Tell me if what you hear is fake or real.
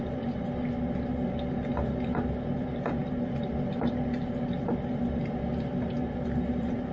real